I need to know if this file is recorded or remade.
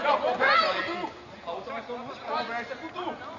recorded